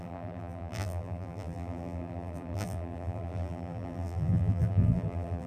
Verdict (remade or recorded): remade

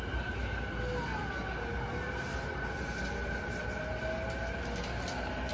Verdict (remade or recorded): recorded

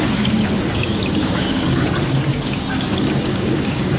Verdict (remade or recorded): remade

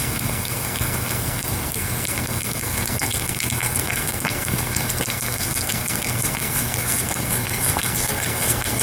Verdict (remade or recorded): remade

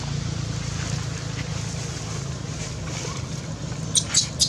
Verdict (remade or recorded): recorded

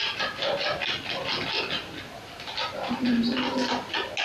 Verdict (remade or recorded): recorded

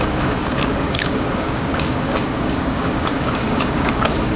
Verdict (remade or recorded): remade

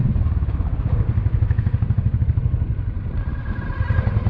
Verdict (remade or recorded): recorded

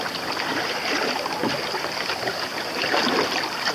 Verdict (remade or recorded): recorded